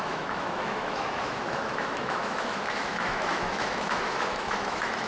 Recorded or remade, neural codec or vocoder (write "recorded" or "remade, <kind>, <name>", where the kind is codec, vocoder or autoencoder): remade, autoencoder, DAC-VAE